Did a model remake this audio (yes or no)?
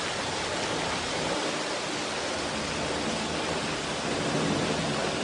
no